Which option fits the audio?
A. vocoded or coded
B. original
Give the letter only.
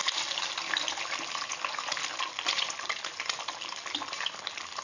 B